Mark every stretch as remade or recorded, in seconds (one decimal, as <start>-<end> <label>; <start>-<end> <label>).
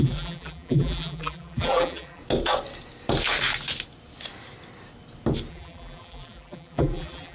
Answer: 0.0-2.2 remade; 2.2-5.5 recorded; 5.5-7.3 remade